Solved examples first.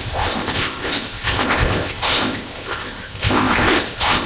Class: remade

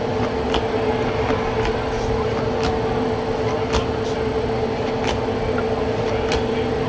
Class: recorded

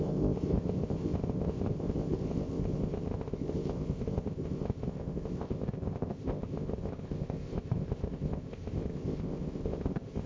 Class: remade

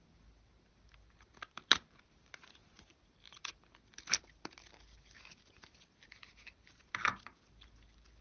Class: recorded